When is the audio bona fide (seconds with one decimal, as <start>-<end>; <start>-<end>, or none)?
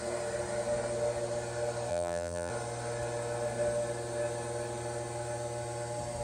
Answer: 0.0-1.9; 2.5-6.2